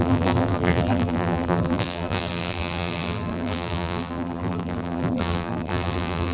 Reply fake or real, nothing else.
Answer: fake